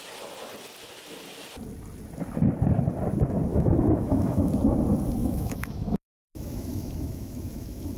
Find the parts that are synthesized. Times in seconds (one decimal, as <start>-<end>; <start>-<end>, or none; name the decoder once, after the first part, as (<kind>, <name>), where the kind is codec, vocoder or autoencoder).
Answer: 3.5-4.5 (autoencoder, DAC-VAE); 5.2-8.0